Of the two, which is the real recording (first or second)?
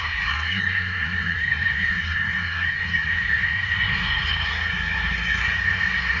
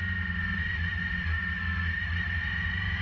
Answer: second